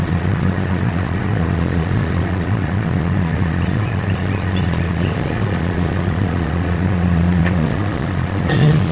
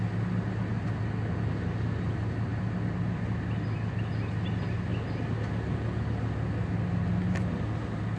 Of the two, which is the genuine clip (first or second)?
second